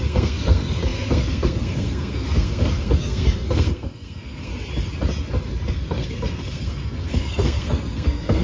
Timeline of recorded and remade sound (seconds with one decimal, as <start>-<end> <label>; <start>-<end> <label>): 0.0-4.5 remade; 4.5-5.7 recorded; 5.7-8.4 remade